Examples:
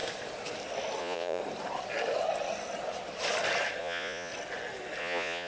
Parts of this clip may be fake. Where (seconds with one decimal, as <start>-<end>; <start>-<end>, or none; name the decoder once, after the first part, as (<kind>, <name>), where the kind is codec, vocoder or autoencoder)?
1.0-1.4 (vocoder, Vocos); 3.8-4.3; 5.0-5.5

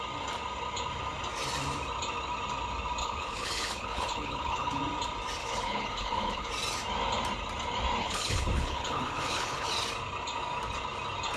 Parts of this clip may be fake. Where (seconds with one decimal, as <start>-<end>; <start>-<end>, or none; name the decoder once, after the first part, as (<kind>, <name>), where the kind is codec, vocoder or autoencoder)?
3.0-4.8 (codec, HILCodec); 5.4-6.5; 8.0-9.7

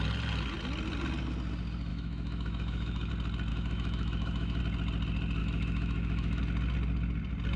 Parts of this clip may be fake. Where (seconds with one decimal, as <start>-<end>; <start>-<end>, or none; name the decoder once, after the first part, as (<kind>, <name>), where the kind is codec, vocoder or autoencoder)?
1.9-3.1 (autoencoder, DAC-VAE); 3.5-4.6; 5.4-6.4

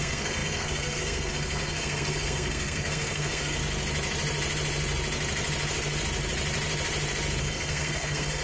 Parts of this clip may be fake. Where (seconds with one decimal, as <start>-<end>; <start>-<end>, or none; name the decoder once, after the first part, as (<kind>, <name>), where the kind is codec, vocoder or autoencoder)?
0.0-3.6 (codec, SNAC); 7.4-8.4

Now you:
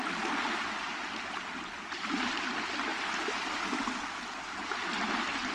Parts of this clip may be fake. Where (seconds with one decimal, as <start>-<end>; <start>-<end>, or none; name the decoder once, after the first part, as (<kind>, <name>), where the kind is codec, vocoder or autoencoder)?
0.9-1.5 (vocoder, BigVGAN v2); 2.9-4.6

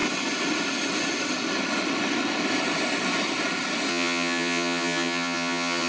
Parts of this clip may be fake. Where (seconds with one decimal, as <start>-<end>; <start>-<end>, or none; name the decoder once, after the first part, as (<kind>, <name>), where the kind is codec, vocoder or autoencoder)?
3.9-5.9 (vocoder, HiFi-GAN)

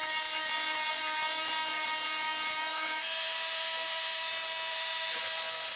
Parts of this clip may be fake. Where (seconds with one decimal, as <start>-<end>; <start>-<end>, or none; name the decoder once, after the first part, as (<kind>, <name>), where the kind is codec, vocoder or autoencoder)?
2.7-4.3 (autoencoder, DAC-VAE); 4.7-5.2